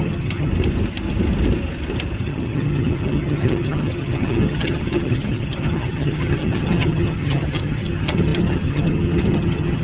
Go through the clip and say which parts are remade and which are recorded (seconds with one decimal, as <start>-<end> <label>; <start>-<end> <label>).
0.0-0.5 remade; 0.5-2.2 recorded; 2.2-9.8 remade